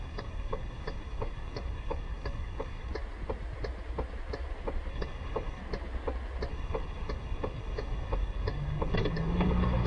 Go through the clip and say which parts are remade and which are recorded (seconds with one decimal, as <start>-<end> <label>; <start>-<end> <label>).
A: 0.0-2.9 remade; 2.9-4.9 recorded; 4.9-5.6 remade; 5.6-6.5 recorded; 6.5-9.9 remade